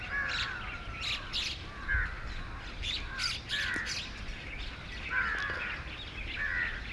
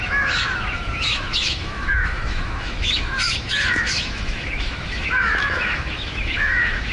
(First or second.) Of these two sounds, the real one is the first